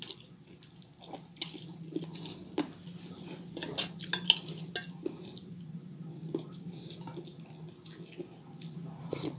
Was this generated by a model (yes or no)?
no